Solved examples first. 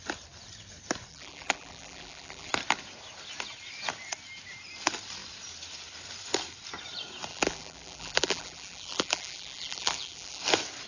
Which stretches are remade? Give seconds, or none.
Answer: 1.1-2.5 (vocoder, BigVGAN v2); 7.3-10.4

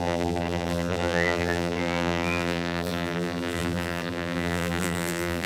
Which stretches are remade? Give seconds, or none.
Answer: 0.0-5.5 (vocoder, BigVGAN v2)

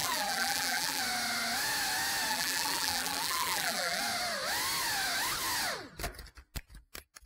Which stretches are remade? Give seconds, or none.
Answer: 0.0-1.0 (vocoder, BigVGAN v2); 2.3-4.0